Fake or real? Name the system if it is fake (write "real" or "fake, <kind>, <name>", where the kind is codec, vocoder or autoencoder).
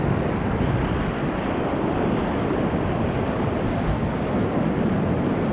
real